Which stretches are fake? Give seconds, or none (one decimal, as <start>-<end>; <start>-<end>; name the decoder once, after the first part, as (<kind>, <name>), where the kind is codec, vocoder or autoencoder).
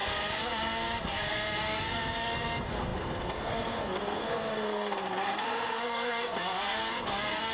0.0-7.5 (codec, SNAC)